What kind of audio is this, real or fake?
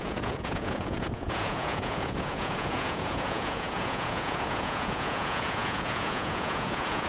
fake